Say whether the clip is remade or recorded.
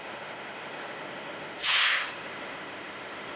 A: remade